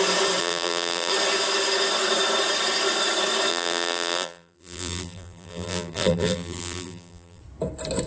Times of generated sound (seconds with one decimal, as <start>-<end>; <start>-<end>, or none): 0.4-1.1; 3.5-7.4